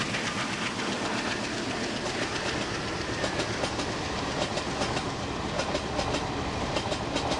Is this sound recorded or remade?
recorded